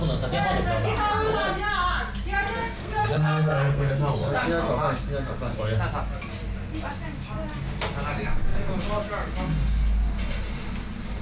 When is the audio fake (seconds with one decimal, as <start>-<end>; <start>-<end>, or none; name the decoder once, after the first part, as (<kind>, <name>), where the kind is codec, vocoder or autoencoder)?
2.6-3.9 (codec, SNAC)